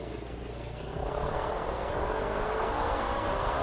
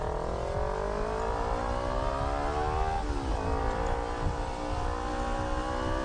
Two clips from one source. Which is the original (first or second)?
second